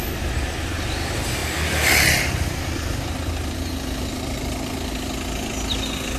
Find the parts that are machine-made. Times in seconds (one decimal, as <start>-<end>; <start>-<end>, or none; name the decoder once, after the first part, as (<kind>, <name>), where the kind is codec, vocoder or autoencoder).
none